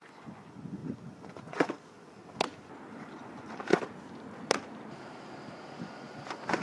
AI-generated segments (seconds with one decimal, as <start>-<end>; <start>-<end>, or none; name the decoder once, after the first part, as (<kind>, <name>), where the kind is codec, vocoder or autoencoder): 0.0-2.2 (vocoder, Vocos); 2.9-3.7; 5.7-6.6

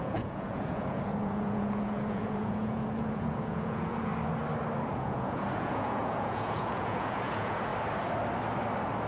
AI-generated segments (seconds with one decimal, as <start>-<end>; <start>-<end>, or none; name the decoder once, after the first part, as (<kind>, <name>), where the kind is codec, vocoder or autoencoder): 0.0-4.1 (vocoder, Vocos); 4.8-7.7